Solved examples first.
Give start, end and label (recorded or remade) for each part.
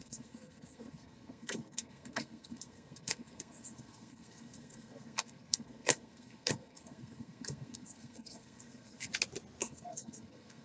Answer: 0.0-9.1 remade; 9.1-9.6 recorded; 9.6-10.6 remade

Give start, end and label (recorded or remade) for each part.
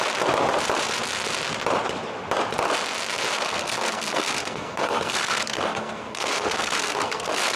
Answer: 0.0-3.3 recorded; 3.3-7.6 remade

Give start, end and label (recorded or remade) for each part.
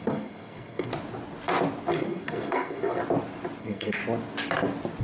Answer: 0.0-0.9 remade; 0.9-1.9 recorded; 1.9-3.0 remade; 3.0-3.6 recorded; 3.6-4.0 remade; 4.0-5.0 recorded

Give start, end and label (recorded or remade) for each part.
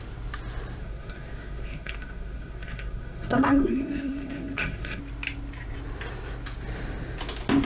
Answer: 0.0-0.8 recorded; 0.8-5.0 remade; 5.0-7.7 recorded